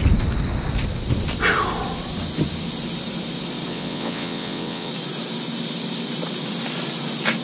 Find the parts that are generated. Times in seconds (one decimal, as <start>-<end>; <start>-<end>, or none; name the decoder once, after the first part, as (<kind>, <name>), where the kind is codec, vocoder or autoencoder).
3.7-4.9 (vocoder, WaveNeXt)